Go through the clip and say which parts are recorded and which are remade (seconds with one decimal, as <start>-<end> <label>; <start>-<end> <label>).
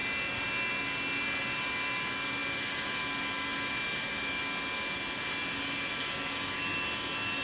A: 0.0-7.4 recorded